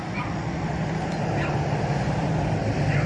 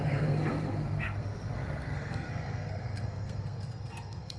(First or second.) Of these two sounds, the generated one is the second